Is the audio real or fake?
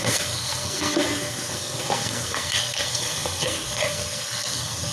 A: fake